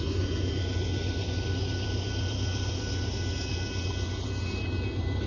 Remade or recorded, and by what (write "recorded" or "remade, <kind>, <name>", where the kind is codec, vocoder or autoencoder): recorded